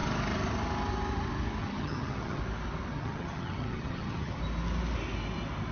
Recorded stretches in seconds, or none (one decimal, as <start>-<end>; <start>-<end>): 0.0-1.6; 2.4-2.9; 4.4-5.7

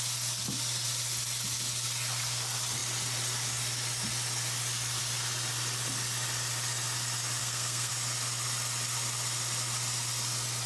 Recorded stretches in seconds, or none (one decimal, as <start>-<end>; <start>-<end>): 0.0-7.4; 7.9-10.7

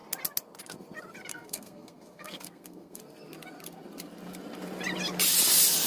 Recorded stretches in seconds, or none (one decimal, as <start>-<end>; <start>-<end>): 0.0-1.3; 3.0-5.9